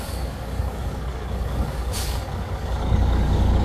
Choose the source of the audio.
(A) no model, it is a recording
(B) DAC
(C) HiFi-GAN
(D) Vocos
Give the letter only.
B